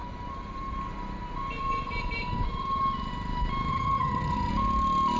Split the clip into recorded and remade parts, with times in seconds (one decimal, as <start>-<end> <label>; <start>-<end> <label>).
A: 0.0-3.7 recorded; 3.7-4.5 remade; 4.5-5.2 recorded